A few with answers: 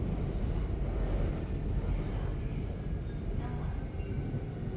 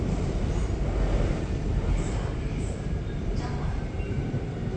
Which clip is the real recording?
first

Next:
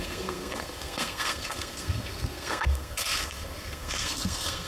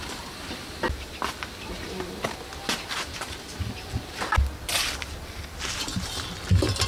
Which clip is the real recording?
second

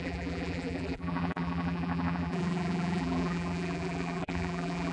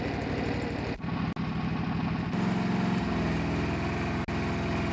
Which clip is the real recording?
second